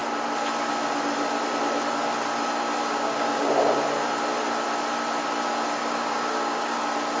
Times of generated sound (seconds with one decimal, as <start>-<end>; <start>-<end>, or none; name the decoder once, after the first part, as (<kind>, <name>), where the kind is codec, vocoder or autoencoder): 2.8-3.5 (codec, DAC); 5.8-6.8